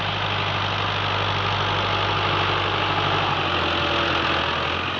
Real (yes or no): yes